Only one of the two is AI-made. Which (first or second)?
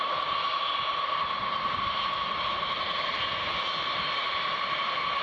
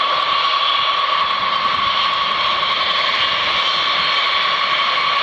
second